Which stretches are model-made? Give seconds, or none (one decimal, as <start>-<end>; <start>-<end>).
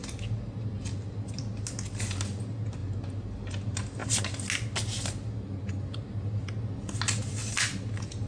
none